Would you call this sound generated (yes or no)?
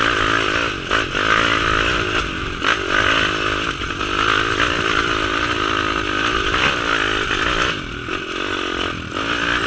no